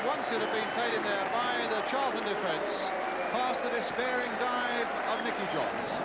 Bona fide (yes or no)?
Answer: yes